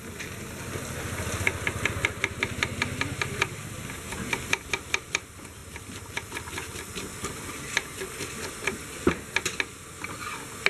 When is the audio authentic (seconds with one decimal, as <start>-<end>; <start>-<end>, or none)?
0.0-10.7